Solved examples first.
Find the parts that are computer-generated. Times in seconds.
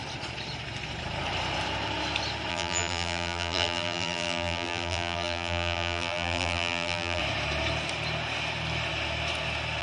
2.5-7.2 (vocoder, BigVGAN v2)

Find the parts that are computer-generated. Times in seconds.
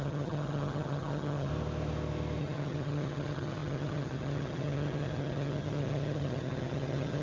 0.0-1.5 (vocoder, HiFi-GAN); 2.4-7.2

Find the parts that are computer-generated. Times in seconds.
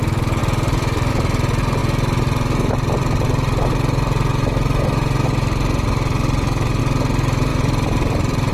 0.4-1.1 (vocoder, BigVGAN v2); 7.5-8.5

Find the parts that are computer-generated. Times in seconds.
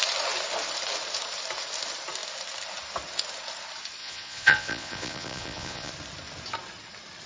4.0-5.9 (vocoder, Vocos)